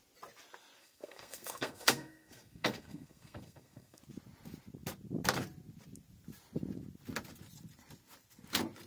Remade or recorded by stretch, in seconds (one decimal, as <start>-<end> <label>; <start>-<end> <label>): 0.0-0.8 recorded; 0.8-4.0 remade; 4.0-8.9 recorded